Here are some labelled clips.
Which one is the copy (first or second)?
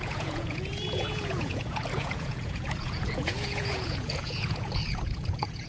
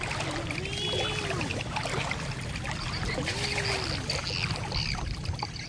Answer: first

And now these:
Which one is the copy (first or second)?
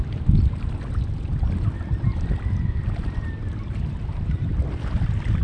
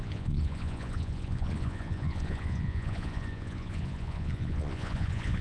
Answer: second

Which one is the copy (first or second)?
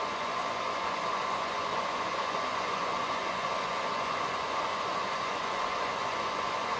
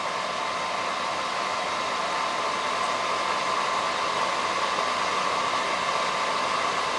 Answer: first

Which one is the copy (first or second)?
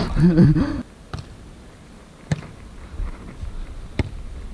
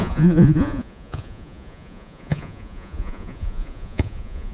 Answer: second